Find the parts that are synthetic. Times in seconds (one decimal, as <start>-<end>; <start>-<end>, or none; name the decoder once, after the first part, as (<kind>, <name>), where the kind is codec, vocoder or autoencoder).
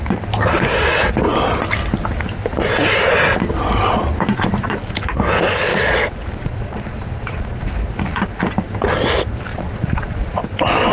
5.7-7.7 (vocoder, Vocos); 9.5-10.4